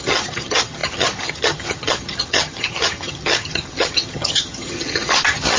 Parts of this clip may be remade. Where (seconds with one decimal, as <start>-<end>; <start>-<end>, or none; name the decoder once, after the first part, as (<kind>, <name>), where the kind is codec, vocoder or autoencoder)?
0.0-5.6 (vocoder, HiFi-GAN)